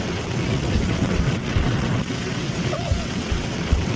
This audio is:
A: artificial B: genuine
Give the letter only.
A